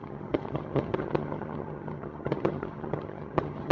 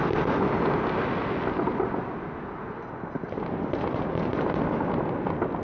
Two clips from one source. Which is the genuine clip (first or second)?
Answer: second